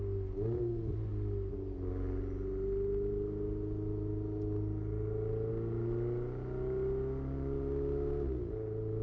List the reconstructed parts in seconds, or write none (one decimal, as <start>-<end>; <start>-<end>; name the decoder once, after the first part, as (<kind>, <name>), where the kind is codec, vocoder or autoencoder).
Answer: none